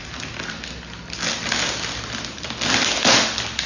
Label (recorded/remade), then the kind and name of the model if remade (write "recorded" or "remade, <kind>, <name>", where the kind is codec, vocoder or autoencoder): recorded